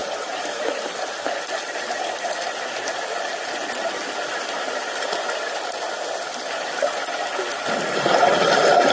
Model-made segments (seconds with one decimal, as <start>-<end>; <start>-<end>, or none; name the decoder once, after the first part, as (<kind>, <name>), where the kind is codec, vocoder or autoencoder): 0.0-0.7 (vocoder, BigVGAN v2); 6.3-7.0